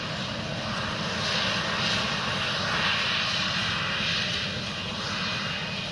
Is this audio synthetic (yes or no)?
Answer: no